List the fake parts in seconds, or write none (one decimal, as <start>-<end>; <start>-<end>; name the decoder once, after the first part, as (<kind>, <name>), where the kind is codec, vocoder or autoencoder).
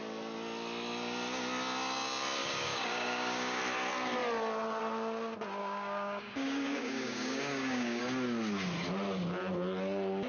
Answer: 2.4-3.6 (codec, DAC); 5.6-8.0